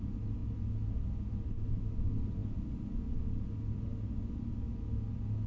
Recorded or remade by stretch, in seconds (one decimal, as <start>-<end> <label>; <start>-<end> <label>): 0.0-5.5 recorded